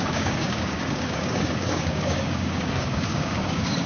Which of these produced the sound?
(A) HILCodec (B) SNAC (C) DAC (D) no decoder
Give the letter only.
C